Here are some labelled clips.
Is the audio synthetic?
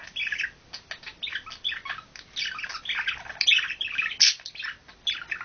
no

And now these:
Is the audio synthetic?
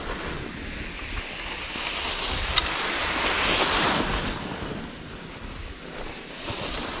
no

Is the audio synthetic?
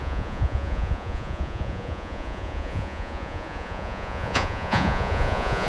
yes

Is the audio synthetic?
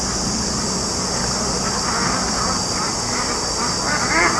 no